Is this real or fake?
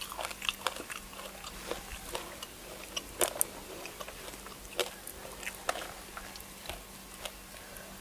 real